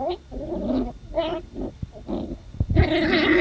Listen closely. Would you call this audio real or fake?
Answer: real